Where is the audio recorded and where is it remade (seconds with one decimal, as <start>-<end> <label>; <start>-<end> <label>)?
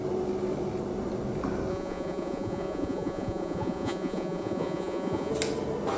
0.0-1.7 recorded; 1.7-5.3 remade; 5.3-6.0 recorded